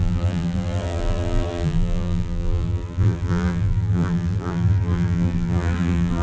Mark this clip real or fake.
fake